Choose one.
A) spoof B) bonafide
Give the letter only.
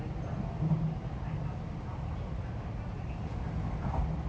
B